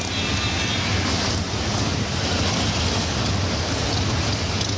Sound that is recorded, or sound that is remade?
recorded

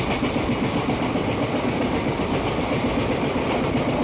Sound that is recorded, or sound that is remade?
recorded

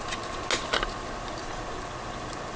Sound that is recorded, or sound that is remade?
recorded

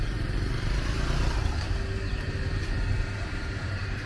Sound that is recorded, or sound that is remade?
recorded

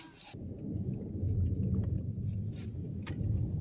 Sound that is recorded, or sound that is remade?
recorded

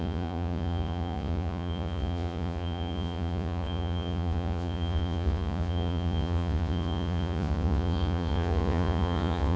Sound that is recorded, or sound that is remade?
remade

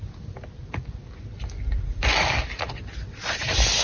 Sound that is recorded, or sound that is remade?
recorded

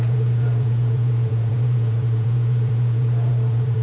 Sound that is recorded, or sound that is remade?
remade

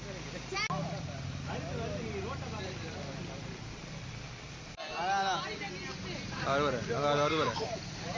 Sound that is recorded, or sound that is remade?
recorded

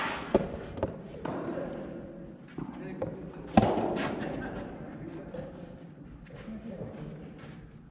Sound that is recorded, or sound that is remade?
recorded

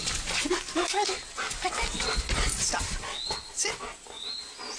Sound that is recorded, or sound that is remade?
recorded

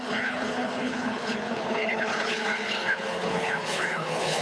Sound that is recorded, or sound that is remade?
remade